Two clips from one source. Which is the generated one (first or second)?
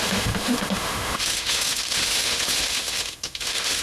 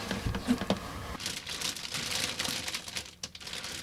first